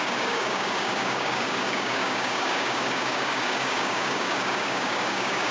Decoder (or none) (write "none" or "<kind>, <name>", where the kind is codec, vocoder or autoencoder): codec, DAC